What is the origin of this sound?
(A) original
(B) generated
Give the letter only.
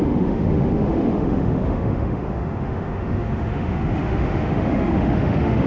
B